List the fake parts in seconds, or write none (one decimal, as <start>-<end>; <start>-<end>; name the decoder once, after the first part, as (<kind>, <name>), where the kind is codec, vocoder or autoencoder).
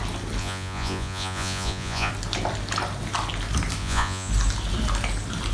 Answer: 0.4-2.1 (vocoder, Vocos); 3.8-4.3